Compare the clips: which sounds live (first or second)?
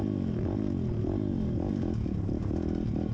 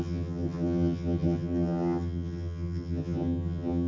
first